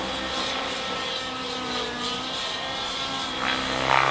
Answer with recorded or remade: recorded